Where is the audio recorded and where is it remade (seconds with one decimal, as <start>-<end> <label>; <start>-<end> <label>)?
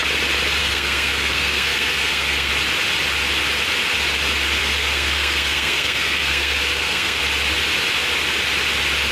0.0-0.6 recorded; 0.6-2.5 remade; 2.5-4.6 recorded; 4.6-7.2 remade; 7.2-9.1 recorded